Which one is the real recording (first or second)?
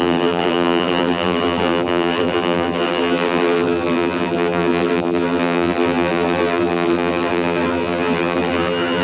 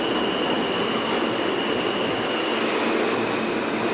second